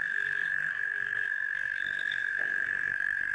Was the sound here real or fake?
fake